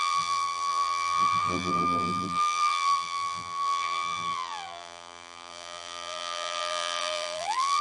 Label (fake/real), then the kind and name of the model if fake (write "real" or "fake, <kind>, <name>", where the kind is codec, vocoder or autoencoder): fake, vocoder, BigVGAN v2